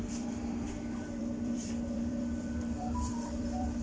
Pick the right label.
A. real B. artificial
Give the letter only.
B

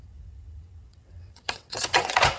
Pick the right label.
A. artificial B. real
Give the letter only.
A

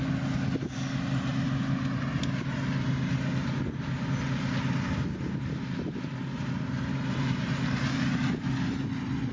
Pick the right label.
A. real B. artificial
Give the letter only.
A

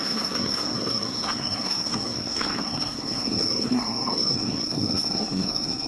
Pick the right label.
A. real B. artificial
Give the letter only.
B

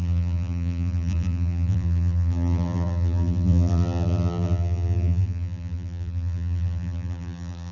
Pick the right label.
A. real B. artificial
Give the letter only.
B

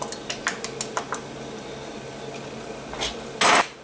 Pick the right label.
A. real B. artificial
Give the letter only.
A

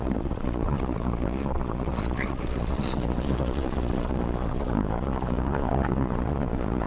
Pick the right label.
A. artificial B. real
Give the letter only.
A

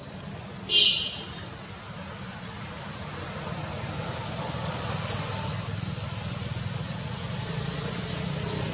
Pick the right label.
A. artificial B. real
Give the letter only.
B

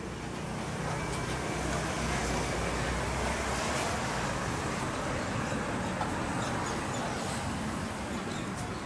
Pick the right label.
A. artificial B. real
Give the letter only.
B